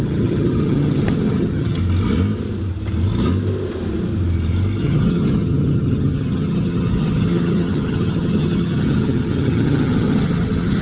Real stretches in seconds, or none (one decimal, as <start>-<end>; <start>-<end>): 1.8-4.8